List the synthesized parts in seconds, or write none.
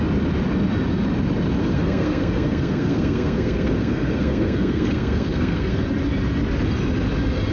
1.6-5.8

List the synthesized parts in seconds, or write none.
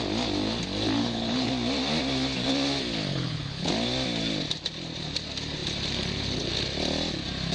1.0-1.5; 3.1-3.7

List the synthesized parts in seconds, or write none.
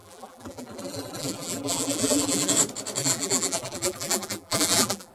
0.0-2.5; 3.0-5.1